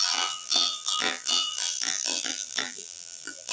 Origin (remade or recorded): remade